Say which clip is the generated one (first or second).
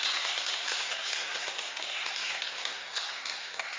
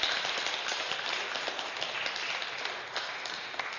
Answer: first